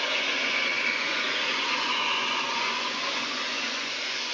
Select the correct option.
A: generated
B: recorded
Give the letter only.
A